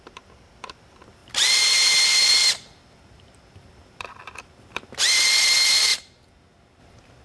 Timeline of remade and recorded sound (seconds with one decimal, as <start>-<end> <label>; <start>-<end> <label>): 0.0-5.9 remade; 5.9-6.8 recorded; 6.8-7.2 remade